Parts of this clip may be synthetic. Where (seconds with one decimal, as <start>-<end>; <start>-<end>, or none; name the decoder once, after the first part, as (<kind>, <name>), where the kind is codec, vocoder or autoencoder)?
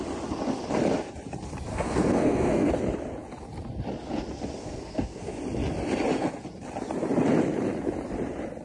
1.7-2.7 (codec, SNAC); 4.6-5.3